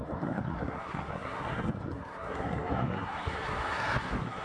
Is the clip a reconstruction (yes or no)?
yes